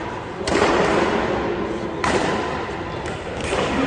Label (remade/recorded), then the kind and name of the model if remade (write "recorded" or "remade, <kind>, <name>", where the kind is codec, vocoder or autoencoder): recorded